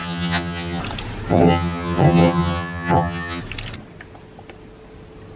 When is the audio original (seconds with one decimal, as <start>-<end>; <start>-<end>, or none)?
0.8-1.3; 3.4-5.4